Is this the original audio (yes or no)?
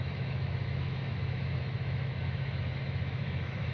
no